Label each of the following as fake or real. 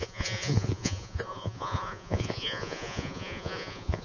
fake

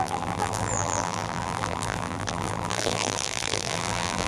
fake